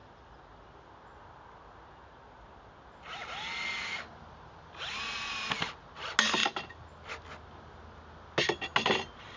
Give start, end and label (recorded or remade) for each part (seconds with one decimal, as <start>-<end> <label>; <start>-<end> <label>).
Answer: 0.0-9.4 recorded